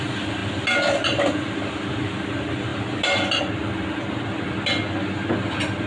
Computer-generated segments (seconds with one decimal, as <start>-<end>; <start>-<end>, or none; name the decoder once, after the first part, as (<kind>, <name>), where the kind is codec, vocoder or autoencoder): none